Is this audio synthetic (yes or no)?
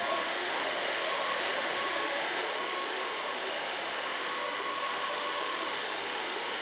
yes